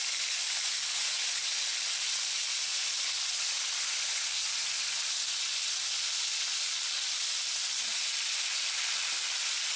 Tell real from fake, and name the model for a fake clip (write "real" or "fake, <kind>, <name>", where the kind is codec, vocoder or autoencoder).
real